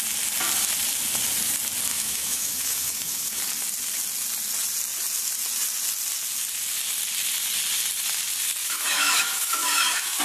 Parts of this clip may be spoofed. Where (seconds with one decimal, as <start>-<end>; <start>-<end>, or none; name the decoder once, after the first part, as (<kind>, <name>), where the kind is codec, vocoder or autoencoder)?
1.9-3.4 (autoencoder, DAC-VAE); 8.6-10.2